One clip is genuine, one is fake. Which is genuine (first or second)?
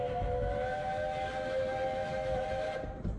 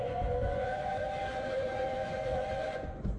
first